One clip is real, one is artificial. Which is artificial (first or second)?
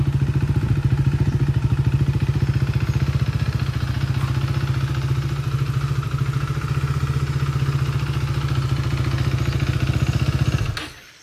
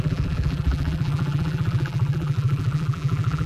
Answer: second